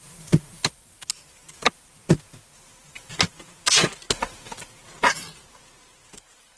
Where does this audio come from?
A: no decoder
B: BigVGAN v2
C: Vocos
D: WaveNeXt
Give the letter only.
A